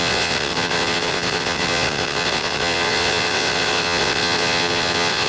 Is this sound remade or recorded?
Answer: remade